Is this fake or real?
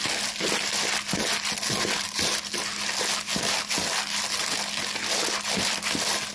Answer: real